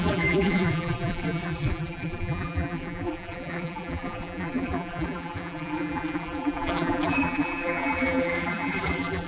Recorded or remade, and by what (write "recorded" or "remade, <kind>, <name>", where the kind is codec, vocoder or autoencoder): remade, vocoder, BigVGAN v2